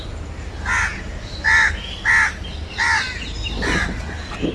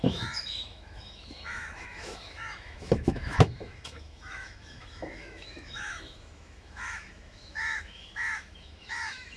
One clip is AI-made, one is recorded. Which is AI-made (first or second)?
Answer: second